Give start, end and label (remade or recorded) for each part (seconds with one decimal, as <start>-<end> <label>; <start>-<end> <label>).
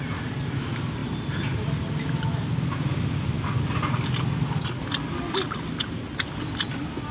0.0-7.1 recorded